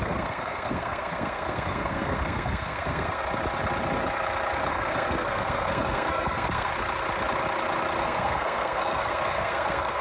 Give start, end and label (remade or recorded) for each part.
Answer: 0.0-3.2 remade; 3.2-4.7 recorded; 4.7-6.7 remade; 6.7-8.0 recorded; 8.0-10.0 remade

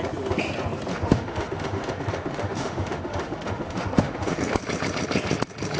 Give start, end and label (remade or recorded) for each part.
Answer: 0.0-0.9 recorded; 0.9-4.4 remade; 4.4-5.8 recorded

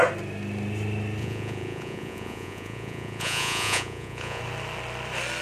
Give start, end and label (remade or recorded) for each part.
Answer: 0.0-1.2 recorded; 1.2-4.4 remade; 4.4-5.4 recorded

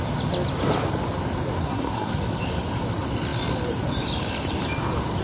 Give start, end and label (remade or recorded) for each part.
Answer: 0.0-1.6 recorded; 1.6-2.1 remade; 2.1-5.2 recorded

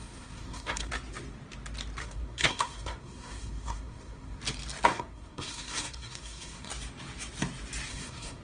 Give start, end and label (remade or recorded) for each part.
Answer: 0.0-0.9 remade; 0.9-2.0 recorded; 2.0-4.4 remade; 4.4-4.9 recorded; 4.9-6.7 remade; 6.7-7.9 recorded; 7.9-8.4 remade

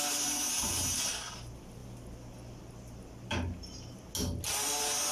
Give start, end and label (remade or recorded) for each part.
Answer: 0.0-5.1 recorded